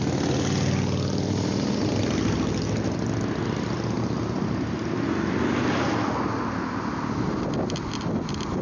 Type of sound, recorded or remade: recorded